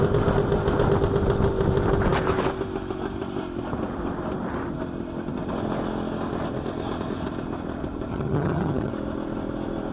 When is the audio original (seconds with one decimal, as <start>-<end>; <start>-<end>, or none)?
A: 0.0-8.1; 8.9-9.9